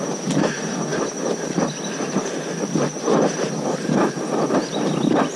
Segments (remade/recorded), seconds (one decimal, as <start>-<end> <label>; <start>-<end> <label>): 0.0-5.4 recorded